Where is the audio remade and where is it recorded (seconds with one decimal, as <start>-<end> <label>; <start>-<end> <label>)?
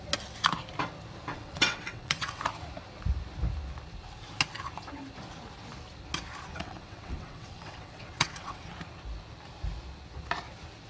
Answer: 0.0-1.3 recorded; 1.3-2.4 remade; 2.4-6.5 recorded; 6.5-8.7 remade; 8.7-10.9 recorded